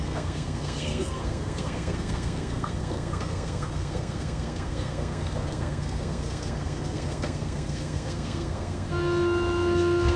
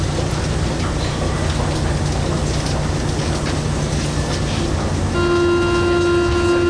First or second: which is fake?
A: first